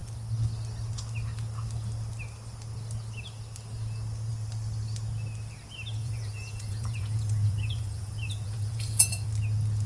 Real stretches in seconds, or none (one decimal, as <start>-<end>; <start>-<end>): 0.0-6.0; 9.3-9.9